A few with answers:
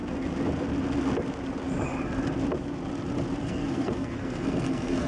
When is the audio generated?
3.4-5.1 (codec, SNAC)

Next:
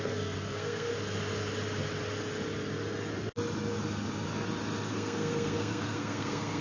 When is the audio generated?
0.0-0.9 (codec, SNAC); 4.9-6.6

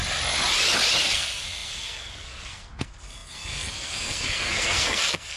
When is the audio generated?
1.0-5.4 (codec, SNAC)

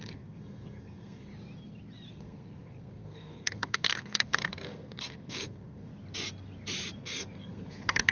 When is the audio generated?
0.0-1.3 (codec, SNAC); 2.1-5.9; 7.0-8.1

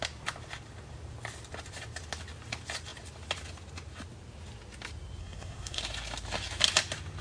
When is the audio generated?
5.2-5.8 (codec, SNAC)

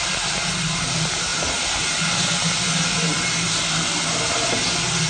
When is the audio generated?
none

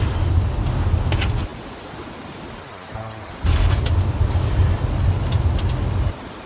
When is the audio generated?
none